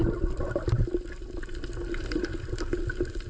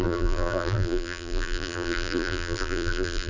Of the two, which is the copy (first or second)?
second